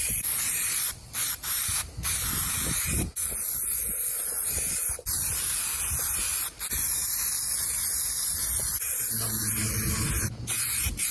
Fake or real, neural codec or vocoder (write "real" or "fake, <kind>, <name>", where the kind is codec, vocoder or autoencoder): real